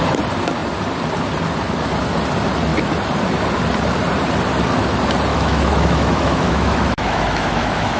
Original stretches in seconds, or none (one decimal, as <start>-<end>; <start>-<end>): 0.0-5.3